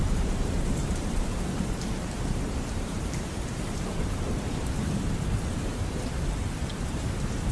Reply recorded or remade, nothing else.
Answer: remade